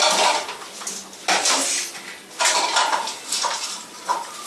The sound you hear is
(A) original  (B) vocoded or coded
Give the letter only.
A